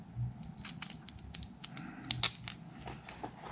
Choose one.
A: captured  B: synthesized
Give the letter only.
A